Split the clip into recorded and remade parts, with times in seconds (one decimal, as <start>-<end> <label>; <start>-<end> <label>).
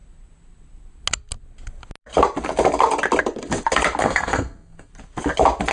0.0-4.0 recorded; 4.0-4.9 remade; 4.9-5.7 recorded